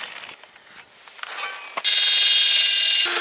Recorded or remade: recorded